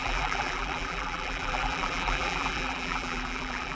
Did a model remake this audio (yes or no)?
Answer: yes